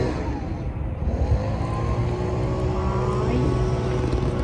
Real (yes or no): yes